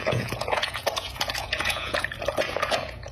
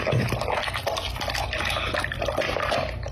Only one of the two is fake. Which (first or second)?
first